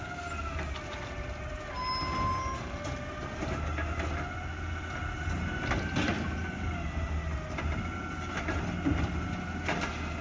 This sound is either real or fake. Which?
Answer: real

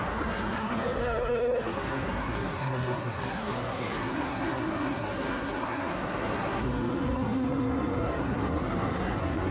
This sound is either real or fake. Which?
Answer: fake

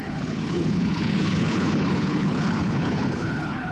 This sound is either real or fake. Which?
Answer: fake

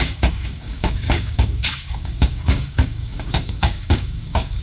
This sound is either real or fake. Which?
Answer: fake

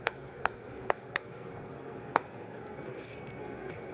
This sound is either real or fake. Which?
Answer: fake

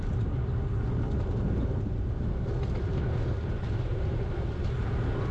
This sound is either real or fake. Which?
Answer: real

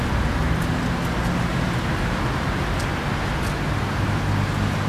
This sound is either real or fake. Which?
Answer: real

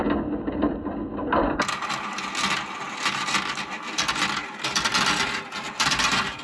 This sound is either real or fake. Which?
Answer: real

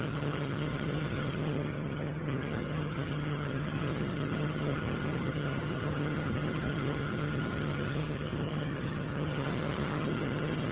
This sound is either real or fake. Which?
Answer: fake